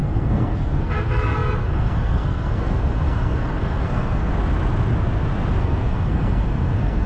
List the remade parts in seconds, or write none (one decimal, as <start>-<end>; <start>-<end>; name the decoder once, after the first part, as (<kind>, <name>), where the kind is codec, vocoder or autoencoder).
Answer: 0.0-4.3 (codec, SNAC); 5.6-7.1